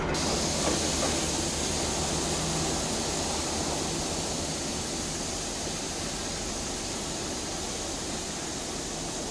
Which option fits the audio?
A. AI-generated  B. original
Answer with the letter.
B